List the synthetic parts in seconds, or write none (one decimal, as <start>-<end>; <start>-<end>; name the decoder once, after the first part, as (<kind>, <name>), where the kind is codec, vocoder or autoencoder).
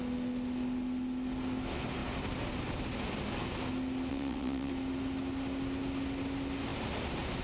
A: 4.1-4.7 (vocoder, WaveNeXt)